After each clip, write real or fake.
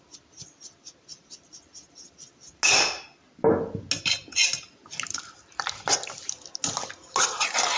real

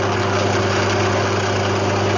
real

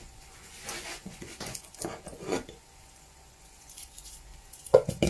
fake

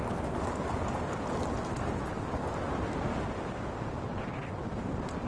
real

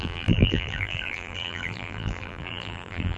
fake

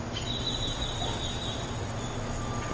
real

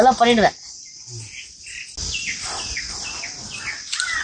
real